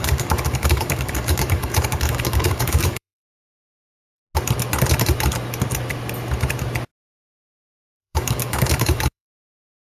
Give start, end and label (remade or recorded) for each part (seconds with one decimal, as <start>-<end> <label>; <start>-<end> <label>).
0.0-4.2 remade; 4.2-7.1 recorded; 7.1-9.9 remade